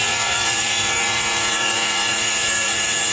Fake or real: fake